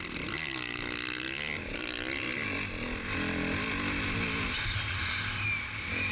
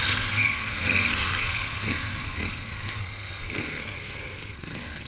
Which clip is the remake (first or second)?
second